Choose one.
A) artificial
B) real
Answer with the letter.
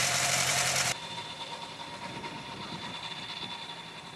A